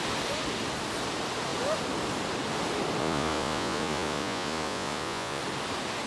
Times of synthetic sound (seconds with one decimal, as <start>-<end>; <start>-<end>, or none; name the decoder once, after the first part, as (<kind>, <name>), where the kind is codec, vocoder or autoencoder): 3.0-5.4 (vocoder, Vocos)